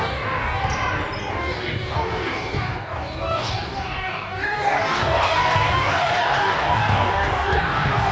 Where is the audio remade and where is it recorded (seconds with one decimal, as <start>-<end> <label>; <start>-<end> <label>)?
0.0-0.6 remade; 0.6-1.3 recorded; 1.3-8.1 remade